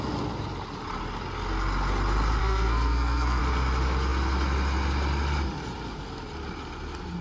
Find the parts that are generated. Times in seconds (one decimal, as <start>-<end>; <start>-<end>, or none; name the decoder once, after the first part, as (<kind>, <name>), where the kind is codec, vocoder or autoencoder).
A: 2.4-3.4 (codec, SNAC)

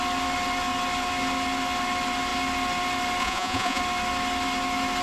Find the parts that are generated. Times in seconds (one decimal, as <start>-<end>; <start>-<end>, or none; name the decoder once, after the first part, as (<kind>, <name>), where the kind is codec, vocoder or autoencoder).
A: 3.2-3.8 (vocoder, Vocos)